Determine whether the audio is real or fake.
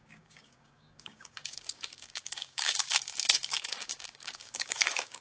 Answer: fake